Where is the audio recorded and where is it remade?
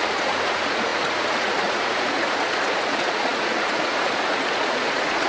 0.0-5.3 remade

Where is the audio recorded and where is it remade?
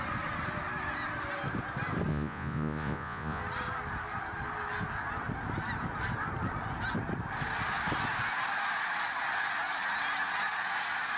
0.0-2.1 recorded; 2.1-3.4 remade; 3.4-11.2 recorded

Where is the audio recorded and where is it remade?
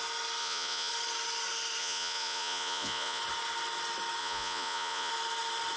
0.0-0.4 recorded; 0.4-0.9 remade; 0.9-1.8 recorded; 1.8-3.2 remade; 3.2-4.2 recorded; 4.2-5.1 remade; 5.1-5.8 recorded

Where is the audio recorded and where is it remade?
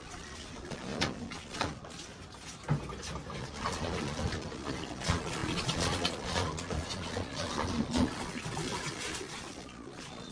0.0-2.1 remade; 2.1-3.4 recorded; 3.4-10.3 remade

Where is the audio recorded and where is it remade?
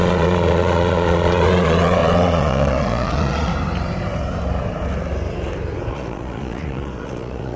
0.0-3.5 remade; 3.5-5.9 recorded; 5.9-7.6 remade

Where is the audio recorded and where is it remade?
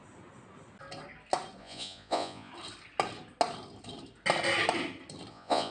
0.0-1.6 recorded; 1.6-2.5 remade; 2.5-5.3 recorded; 5.3-5.7 remade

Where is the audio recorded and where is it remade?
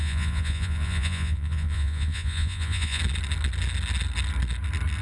0.0-3.0 remade; 3.0-5.0 recorded